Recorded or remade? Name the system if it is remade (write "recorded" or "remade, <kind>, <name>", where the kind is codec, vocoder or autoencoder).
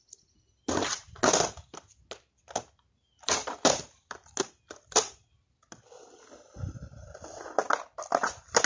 recorded